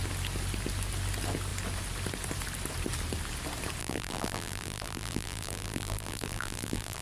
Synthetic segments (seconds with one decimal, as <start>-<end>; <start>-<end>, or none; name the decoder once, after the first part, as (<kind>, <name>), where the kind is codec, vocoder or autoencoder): 3.8-7.0 (vocoder, BigVGAN v2)